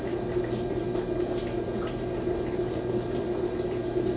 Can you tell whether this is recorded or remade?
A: recorded